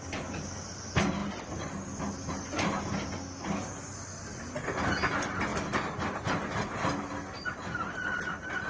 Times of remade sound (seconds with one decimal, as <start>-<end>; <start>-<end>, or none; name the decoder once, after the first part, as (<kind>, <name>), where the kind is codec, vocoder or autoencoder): none